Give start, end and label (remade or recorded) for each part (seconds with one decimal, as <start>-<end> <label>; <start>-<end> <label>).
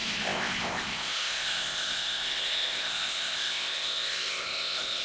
0.0-5.0 remade